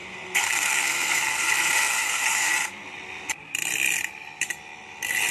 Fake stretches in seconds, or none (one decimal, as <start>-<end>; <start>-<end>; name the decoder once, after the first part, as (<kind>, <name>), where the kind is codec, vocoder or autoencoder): 0.0-2.5 (codec, SNAC)